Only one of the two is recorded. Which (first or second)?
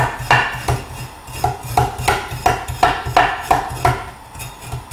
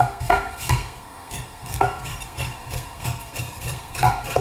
first